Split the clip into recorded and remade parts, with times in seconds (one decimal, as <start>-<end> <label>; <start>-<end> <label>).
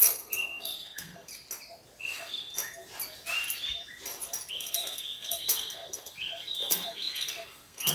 0.0-1.3 remade; 1.3-2.0 recorded; 2.0-2.5 remade; 2.5-4.5 recorded; 4.5-7.9 remade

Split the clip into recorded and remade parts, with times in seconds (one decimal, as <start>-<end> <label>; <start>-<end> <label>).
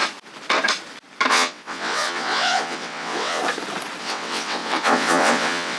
0.0-1.3 recorded; 1.3-3.4 remade; 3.4-4.0 recorded; 4.0-5.8 remade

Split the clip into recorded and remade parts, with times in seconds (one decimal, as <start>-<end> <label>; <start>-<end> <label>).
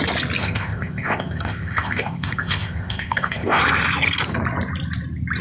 0.0-0.4 recorded; 0.4-3.6 remade; 3.6-5.4 recorded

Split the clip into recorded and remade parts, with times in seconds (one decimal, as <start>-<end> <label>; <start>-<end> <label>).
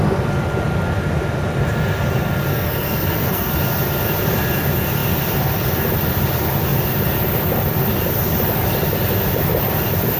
0.0-2.5 recorded; 2.5-3.5 remade; 3.5-10.2 recorded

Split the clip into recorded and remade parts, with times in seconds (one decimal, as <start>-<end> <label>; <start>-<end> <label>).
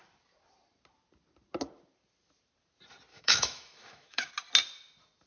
0.0-3.1 recorded; 3.1-4.3 remade; 4.3-5.3 recorded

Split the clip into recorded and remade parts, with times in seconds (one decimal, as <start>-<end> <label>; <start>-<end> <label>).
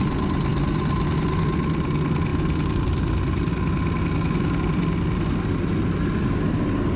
0.0-7.0 recorded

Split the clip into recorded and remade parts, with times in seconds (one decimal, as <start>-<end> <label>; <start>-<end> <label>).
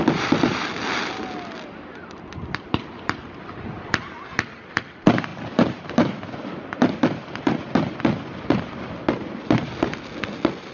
0.0-10.7 recorded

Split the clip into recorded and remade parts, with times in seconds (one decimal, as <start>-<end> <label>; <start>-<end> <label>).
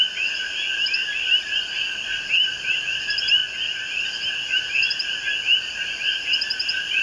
0.0-7.0 recorded